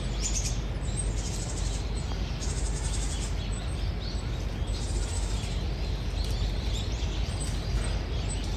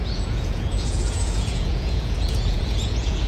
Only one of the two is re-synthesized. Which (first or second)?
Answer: second